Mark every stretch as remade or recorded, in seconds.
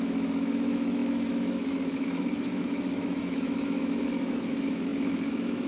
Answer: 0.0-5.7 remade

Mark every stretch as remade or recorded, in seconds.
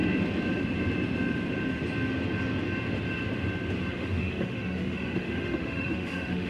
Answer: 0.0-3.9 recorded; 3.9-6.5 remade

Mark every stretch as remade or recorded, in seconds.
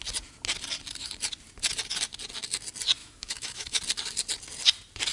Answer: 0.0-3.0 recorded; 3.0-3.8 remade; 3.8-5.1 recorded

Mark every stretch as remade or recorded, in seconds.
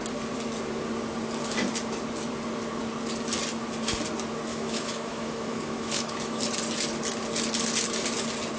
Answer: 0.0-4.5 recorded; 4.5-6.4 remade; 6.4-8.6 recorded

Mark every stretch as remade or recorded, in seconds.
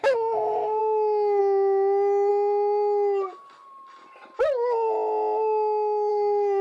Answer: 0.0-2.3 remade; 2.3-6.1 recorded; 6.1-6.6 remade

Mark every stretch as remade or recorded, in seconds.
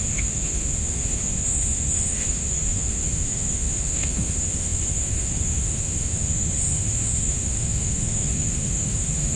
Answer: 0.0-9.4 remade